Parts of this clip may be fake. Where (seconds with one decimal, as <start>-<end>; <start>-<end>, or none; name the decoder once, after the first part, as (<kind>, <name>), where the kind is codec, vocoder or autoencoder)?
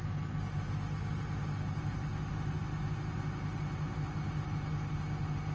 none